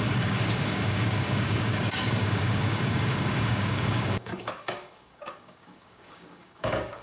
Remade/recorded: remade